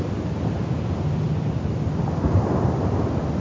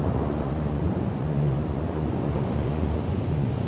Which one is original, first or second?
first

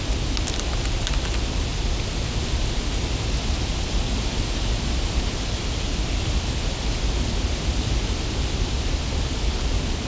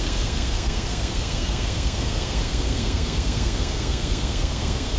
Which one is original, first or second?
first